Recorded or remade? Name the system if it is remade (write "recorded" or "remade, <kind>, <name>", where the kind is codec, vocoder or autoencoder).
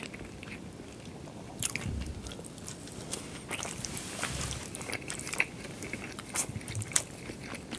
remade, vocoder, BigVGAN v2